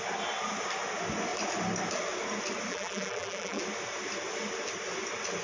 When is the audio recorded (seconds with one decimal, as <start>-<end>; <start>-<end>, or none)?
0.0-2.7; 3.6-5.4